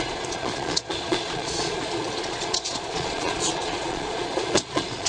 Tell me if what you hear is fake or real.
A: fake